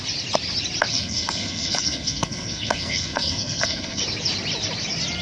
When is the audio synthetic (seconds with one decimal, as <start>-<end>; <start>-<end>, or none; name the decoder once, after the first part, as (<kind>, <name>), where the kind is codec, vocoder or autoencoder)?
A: 0.9-4.0 (codec, SNAC)